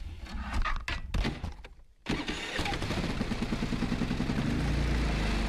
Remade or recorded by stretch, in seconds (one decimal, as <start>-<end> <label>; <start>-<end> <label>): 0.0-5.5 recorded